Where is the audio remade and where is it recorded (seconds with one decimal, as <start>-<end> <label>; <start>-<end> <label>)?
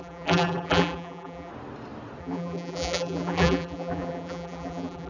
0.0-1.5 remade; 1.5-2.2 recorded; 2.2-5.1 remade